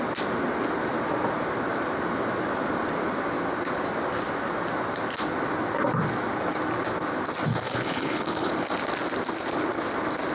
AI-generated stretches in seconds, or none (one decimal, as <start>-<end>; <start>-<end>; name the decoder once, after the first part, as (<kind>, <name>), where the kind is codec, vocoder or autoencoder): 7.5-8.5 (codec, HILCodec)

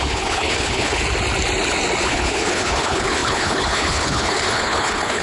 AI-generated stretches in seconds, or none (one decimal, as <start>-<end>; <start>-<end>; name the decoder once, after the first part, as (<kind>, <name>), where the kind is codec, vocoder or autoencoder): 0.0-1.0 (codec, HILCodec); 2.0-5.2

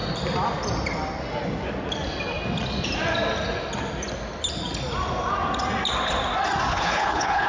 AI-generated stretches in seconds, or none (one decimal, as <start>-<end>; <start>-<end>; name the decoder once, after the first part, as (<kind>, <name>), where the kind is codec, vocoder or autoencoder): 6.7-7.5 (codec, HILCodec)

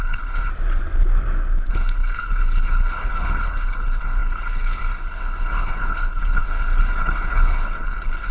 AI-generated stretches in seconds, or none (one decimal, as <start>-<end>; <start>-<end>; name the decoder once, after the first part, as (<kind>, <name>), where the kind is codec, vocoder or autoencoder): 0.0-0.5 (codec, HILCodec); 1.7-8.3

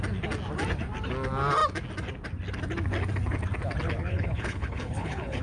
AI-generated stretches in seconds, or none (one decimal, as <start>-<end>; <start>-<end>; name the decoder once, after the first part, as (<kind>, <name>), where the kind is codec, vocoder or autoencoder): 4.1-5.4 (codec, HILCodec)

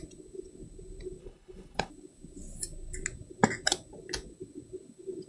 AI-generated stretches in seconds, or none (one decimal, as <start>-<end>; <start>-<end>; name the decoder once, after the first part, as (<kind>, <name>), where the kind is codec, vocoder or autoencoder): 1.2-1.9 (codec, HILCodec)